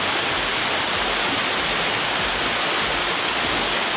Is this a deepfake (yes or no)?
no